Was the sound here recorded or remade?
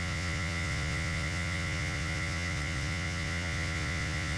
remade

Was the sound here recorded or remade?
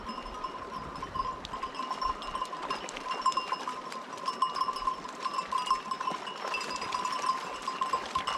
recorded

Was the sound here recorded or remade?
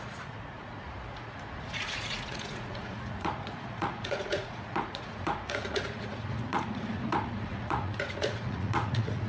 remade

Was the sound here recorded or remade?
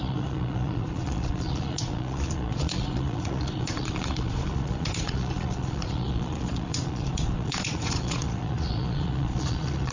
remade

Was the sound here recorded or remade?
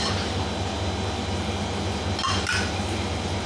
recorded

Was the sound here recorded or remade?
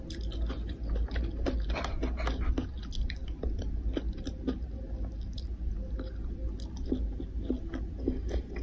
recorded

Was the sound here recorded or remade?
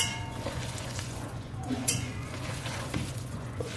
remade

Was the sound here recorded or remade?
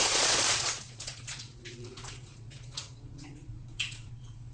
remade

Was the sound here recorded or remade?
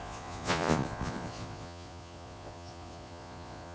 remade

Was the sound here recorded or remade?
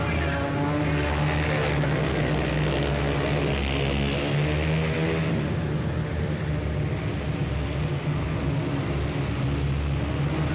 recorded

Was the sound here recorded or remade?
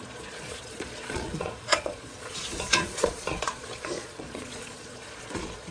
remade